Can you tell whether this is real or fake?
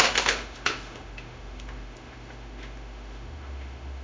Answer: fake